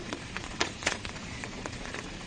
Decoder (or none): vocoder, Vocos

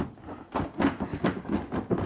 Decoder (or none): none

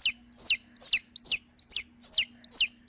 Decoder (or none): none